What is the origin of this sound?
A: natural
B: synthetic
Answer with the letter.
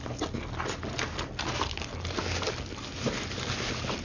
A